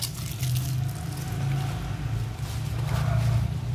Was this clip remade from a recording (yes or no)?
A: no